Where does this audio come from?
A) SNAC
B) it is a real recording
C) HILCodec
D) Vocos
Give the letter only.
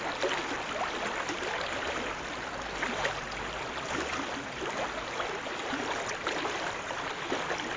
B